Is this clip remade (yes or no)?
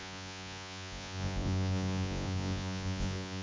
yes